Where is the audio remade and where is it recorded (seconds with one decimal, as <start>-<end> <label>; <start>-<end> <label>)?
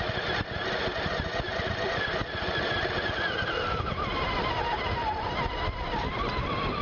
0.0-1.5 recorded; 1.5-3.2 remade; 3.2-6.8 recorded